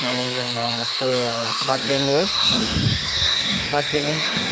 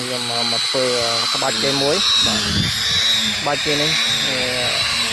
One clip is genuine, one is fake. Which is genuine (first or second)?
second